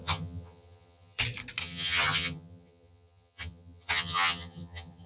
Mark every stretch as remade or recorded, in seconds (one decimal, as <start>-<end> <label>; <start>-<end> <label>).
0.0-1.2 remade; 1.2-1.6 recorded; 1.6-5.1 remade